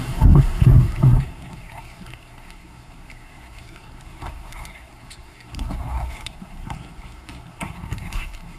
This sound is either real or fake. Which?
fake